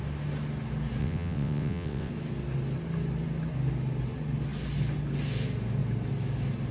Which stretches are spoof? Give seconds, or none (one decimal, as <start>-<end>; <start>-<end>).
1.0-2.1